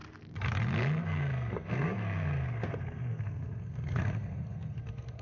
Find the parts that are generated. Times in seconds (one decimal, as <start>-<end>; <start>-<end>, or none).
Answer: 1.0-5.2

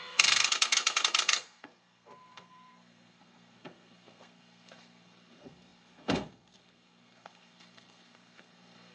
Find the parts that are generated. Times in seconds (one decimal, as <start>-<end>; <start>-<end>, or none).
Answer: 0.0-8.9

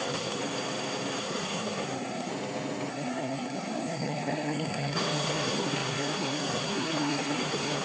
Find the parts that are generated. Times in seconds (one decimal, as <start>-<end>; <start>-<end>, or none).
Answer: 0.0-0.4; 1.2-2.3; 2.9-7.8

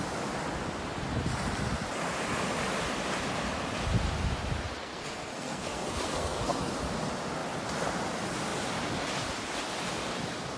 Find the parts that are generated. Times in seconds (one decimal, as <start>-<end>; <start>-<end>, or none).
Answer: 4.8-6.7

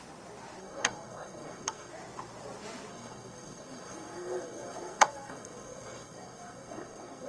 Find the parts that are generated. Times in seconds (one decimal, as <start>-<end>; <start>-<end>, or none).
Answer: 0.6-1.9; 2.9-7.3

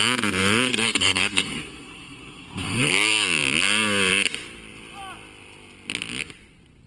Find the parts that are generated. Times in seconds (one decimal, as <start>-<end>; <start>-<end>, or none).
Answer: 0.7-2.9

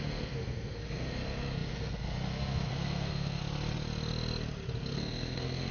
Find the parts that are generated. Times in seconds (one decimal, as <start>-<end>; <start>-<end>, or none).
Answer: 0.0-3.4; 4.8-5.7